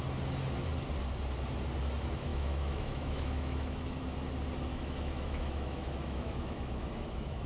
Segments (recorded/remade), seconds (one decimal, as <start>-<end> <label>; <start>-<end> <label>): 0.0-2.3 recorded; 2.3-4.0 remade; 4.0-4.7 recorded; 4.7-7.5 remade